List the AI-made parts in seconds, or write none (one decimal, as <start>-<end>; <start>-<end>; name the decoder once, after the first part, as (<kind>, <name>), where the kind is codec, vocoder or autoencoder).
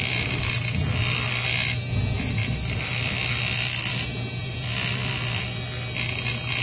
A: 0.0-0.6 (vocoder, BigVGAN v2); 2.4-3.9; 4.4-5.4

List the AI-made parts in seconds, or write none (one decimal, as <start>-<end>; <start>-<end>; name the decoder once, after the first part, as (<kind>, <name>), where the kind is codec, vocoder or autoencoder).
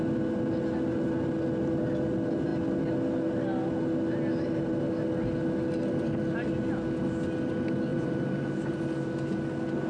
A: 7.9-8.8 (vocoder, BigVGAN v2)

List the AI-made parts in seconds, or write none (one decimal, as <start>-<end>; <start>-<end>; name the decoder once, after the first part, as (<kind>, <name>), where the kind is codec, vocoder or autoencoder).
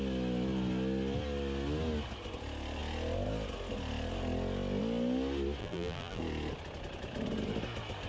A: 5.6-6.2 (vocoder, BigVGAN v2)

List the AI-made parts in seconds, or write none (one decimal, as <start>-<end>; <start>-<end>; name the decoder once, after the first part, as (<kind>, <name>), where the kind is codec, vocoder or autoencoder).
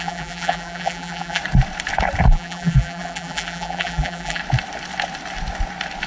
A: 0.0-1.4 (vocoder, BigVGAN v2); 2.3-4.4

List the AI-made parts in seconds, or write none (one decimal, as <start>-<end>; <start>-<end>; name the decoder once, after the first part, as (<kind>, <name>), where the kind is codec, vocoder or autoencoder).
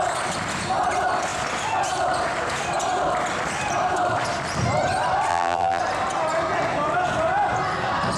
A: 5.3-5.8 (vocoder, BigVGAN v2)